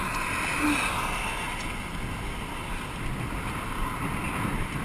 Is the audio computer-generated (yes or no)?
no